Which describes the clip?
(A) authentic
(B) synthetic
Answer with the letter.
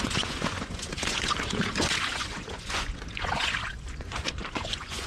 B